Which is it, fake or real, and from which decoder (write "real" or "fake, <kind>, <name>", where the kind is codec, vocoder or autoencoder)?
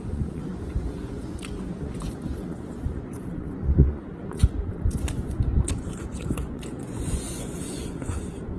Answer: fake, vocoder, Vocos